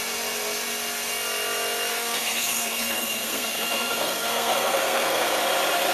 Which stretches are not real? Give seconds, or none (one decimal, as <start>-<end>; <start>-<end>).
1.9-5.4